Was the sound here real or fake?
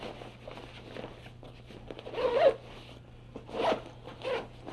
real